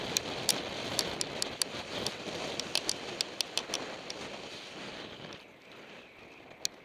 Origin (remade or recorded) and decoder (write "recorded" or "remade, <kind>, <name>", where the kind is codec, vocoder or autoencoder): recorded